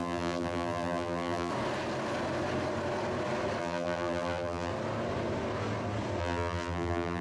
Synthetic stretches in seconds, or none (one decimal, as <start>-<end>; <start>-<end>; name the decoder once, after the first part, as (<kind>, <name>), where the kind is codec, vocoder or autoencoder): 0.0-1.5 (vocoder, BigVGAN v2); 3.6-4.7; 6.2-7.2